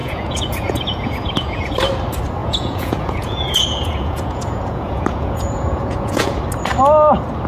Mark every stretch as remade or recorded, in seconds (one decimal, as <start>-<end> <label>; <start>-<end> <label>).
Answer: 0.0-1.7 remade; 1.7-2.4 recorded; 2.4-6.4 remade; 6.4-7.5 recorded